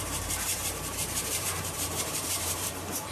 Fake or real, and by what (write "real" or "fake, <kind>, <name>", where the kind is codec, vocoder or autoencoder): fake, vocoder, BigVGAN v2